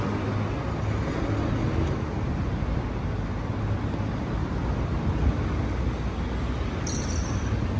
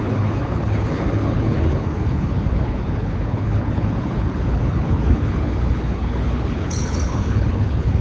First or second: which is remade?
second